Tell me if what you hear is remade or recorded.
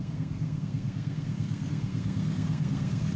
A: remade